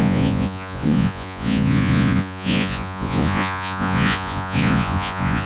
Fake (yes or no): yes